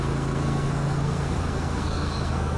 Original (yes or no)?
no